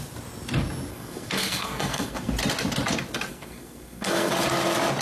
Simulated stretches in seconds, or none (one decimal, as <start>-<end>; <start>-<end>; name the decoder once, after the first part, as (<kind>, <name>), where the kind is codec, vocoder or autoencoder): 0.9-2.3 (codec, SNAC); 3.3-4.3